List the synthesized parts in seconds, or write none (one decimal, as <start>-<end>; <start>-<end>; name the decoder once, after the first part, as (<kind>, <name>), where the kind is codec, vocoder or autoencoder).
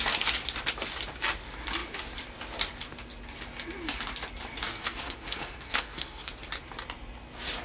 4.7-6.3 (codec, SNAC)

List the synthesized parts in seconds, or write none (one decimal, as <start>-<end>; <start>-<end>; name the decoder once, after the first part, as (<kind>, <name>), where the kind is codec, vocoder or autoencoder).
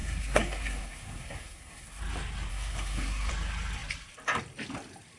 0.0-2.0 (codec, SNAC); 2.5-3.3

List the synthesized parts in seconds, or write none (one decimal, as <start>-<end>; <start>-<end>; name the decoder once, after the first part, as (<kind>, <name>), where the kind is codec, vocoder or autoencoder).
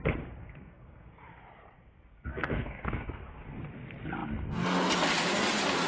0.4-1.1 (codec, SNAC); 2.1-3.2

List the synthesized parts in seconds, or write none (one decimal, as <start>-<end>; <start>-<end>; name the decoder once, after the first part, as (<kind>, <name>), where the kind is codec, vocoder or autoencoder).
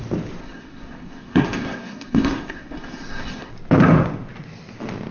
0.4-3.5 (codec, SNAC)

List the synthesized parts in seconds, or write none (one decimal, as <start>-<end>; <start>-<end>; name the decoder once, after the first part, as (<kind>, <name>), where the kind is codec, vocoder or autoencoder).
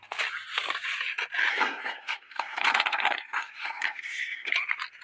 1.5-4.5 (codec, SNAC)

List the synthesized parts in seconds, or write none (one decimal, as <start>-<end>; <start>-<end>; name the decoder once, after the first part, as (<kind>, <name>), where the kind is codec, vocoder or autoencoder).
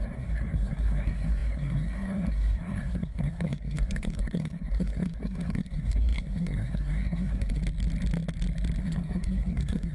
0.0-7.6 (codec, SNAC); 8.8-9.9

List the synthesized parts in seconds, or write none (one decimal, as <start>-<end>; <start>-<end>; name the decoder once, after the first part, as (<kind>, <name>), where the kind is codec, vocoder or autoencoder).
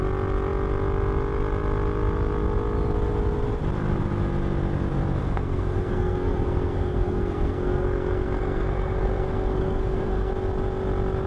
5.2-10.3 (codec, SNAC)